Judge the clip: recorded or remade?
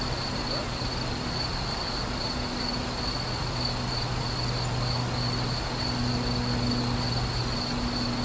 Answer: recorded